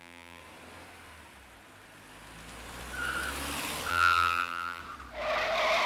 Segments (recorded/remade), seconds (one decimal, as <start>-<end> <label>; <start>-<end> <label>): 0.0-0.4 remade; 0.4-3.9 recorded; 3.9-4.8 remade; 4.8-5.9 recorded

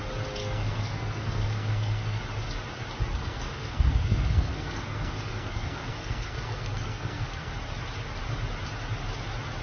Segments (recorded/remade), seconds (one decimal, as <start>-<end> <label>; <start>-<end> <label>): 0.0-0.4 recorded; 0.4-2.2 remade; 2.2-3.1 recorded; 3.1-7.5 remade; 7.5-9.6 recorded

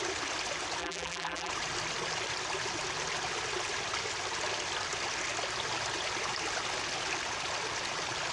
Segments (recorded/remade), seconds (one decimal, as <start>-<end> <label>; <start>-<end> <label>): 0.0-0.8 recorded; 0.8-1.5 remade; 1.5-8.3 recorded

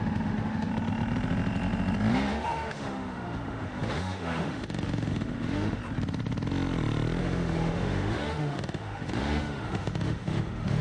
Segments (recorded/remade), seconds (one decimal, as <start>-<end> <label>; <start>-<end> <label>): 0.0-0.7 remade; 0.7-2.1 recorded; 2.1-5.8 remade; 5.8-7.2 recorded; 7.2-10.8 remade

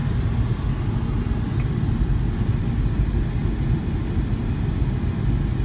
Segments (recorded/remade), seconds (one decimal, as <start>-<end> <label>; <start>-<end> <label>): 0.0-5.6 recorded

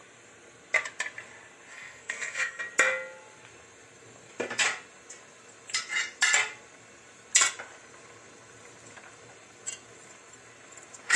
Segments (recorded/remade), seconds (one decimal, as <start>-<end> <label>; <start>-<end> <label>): 0.0-1.7 recorded; 1.7-2.6 remade; 2.6-11.2 recorded

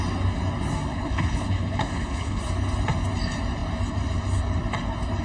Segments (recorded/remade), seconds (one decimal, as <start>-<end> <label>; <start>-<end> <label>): 0.0-0.9 recorded; 0.9-2.4 remade; 2.4-5.2 recorded

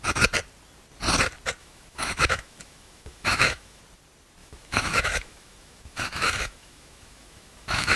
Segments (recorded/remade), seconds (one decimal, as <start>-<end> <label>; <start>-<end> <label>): 0.0-1.6 recorded; 1.6-3.8 remade; 3.8-4.4 recorded; 4.4-8.0 remade